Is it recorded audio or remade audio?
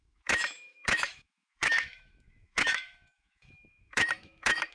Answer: remade